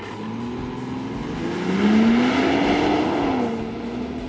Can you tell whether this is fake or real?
real